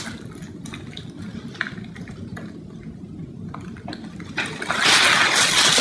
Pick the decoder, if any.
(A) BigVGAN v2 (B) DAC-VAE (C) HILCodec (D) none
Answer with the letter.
D